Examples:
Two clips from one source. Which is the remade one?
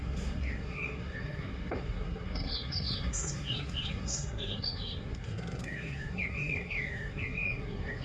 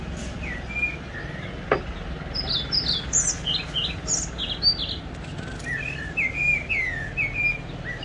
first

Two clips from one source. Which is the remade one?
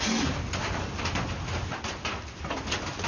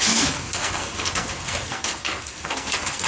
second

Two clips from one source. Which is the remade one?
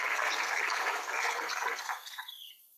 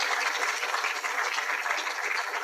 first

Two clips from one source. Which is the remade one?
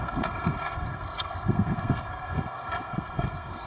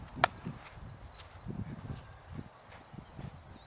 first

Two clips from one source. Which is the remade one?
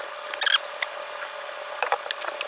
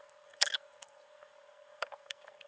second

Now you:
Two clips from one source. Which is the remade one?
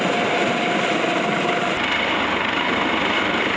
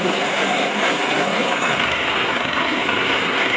second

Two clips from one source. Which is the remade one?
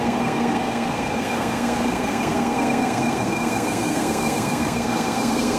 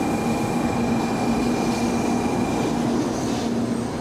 first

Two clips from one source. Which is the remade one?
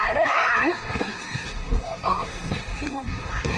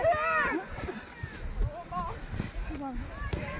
first